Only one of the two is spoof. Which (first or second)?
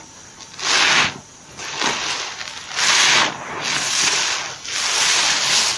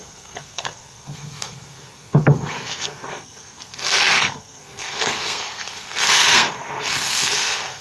second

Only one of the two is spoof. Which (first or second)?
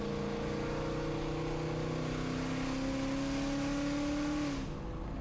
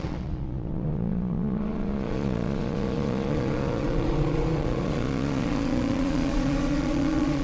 second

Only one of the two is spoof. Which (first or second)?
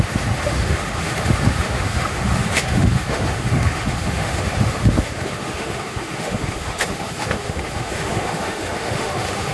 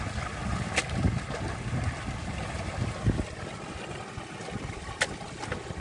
first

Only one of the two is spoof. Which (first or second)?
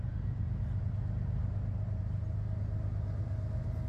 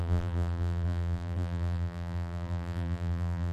second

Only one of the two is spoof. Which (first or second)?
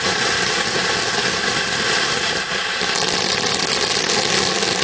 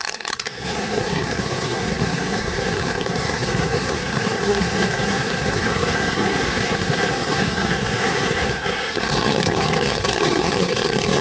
second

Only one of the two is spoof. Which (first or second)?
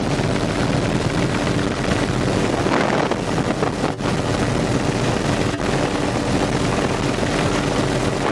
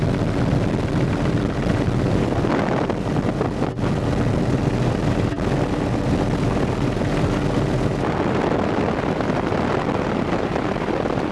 second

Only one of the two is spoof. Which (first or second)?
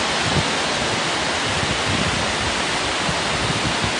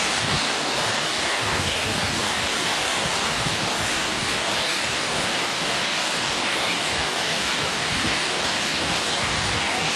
second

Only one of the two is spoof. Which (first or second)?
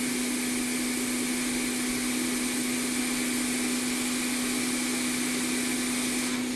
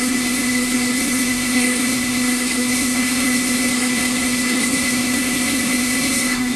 second